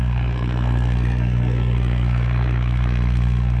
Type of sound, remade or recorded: remade